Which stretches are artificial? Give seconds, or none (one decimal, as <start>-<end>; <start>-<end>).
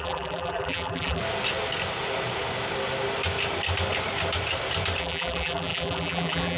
0.0-1.2; 5.0-6.6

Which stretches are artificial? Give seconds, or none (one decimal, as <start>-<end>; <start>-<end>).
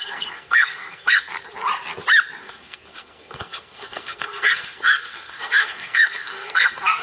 0.0-1.3; 2.4-7.0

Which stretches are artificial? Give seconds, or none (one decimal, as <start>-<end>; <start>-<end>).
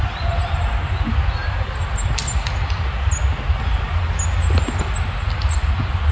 none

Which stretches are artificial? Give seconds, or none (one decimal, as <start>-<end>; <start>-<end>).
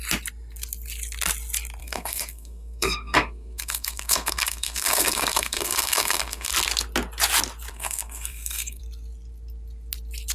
1.8-6.5; 7.7-8.8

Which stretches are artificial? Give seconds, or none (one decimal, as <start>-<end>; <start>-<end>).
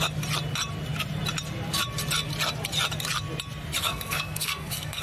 3.8-5.0